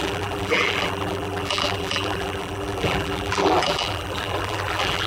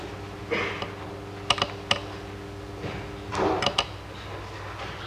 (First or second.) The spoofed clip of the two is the first